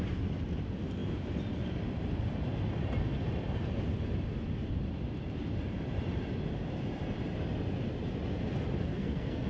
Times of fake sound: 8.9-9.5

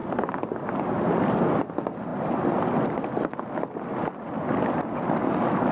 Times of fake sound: none

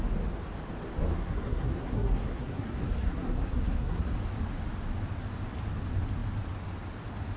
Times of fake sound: 1.1-4.1

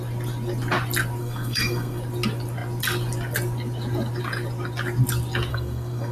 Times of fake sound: 1.2-2.0; 5.5-6.1

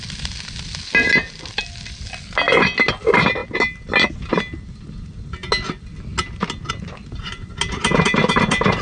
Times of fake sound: none

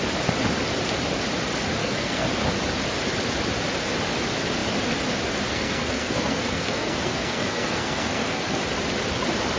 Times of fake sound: 1.8-2.3; 5.5-8.6

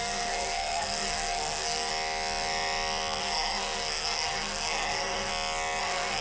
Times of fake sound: 0.0-1.9; 3.2-5.3; 5.8-6.2

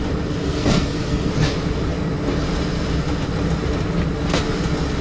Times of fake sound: 0.4-1.3